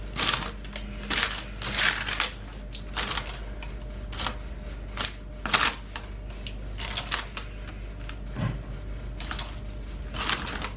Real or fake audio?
real